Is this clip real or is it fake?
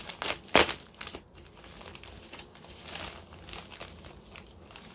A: real